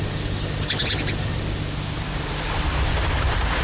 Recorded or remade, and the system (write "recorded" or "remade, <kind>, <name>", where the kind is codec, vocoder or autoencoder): recorded